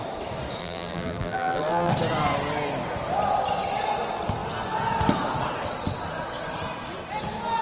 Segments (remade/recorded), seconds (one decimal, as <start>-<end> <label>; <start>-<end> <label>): 0.0-0.6 recorded; 0.6-1.9 remade; 1.9-7.6 recorded